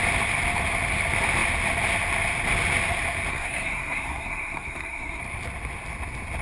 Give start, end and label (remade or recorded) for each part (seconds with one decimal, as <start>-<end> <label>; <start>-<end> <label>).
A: 0.0-3.3 recorded; 3.3-5.2 remade; 5.2-6.4 recorded